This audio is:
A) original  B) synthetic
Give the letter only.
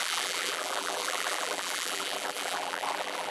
B